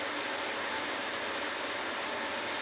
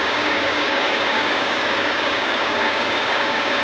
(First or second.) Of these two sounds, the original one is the first